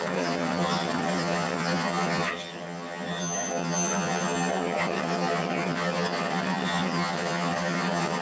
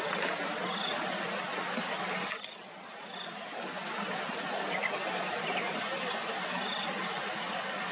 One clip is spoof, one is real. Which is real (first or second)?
second